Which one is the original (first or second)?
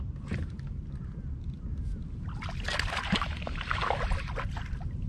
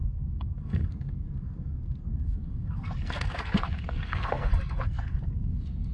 first